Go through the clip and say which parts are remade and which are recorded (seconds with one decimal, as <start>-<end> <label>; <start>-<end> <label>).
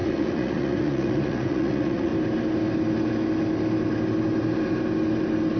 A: 0.0-2.1 remade; 2.1-5.6 recorded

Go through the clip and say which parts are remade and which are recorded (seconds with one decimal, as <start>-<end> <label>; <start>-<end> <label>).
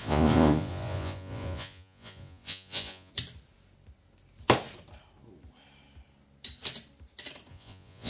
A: 0.0-3.1 remade; 3.1-7.5 recorded; 7.5-8.1 remade